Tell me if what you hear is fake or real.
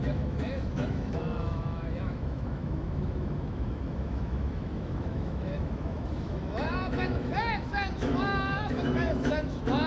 fake